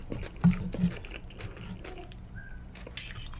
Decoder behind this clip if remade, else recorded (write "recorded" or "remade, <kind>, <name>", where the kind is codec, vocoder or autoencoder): recorded